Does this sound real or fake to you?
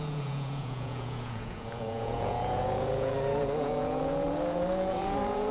fake